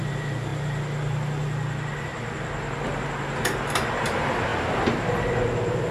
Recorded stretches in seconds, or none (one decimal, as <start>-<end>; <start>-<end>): 0.0-5.9